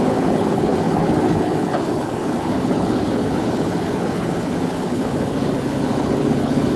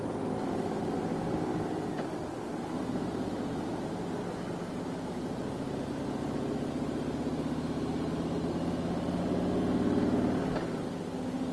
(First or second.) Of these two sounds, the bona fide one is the second